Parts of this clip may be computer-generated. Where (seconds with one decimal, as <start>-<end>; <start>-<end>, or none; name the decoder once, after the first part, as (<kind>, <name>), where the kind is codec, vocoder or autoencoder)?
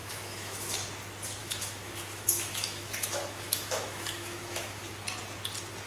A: 0.0-0.8 (autoencoder, DAC-VAE); 1.4-4.9